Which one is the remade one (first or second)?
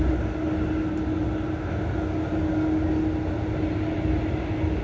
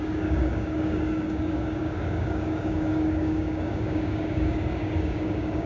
second